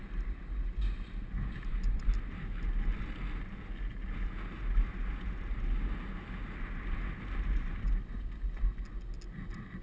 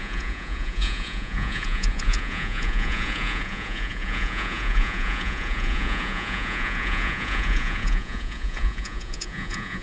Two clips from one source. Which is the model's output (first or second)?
second